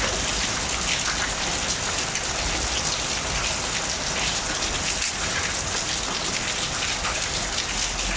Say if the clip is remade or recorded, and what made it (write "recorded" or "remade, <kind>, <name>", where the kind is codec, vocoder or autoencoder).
recorded